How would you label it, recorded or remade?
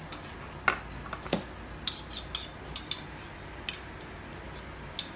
recorded